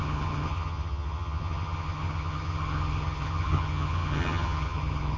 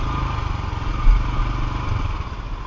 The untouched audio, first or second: second